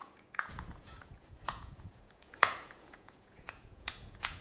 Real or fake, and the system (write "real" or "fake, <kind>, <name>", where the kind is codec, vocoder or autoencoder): fake, vocoder, Vocos